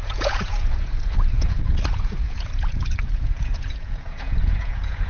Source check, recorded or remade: remade